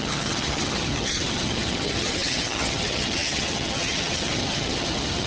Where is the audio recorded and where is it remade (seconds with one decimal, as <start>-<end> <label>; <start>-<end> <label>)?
0.0-5.3 remade